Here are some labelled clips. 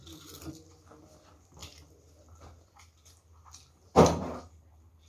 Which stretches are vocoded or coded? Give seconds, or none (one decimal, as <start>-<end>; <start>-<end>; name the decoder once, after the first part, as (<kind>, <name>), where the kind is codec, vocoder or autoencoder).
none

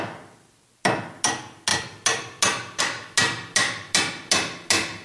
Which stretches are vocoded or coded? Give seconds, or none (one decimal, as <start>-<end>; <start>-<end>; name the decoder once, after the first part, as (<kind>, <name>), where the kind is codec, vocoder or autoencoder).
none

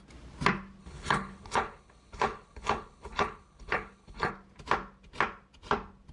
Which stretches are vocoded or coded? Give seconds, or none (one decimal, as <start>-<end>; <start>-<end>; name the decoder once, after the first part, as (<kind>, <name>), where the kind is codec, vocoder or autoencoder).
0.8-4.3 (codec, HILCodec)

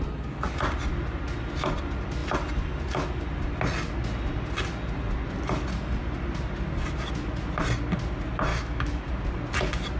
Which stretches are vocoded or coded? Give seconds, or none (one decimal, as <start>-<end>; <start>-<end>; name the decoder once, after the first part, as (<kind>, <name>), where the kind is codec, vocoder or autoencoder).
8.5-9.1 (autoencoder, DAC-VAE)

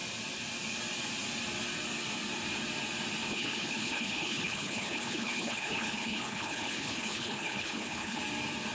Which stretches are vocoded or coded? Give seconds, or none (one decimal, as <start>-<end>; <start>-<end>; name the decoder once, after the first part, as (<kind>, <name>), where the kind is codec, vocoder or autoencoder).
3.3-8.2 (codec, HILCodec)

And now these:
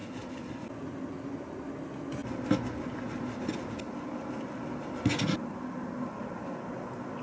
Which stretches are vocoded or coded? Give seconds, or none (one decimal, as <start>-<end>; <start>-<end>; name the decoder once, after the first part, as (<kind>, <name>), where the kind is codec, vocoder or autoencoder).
none